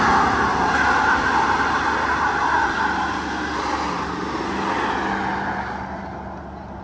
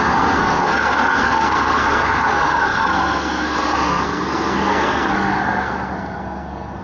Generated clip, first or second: second